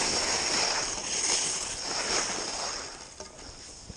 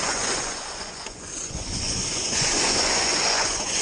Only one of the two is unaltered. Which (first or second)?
first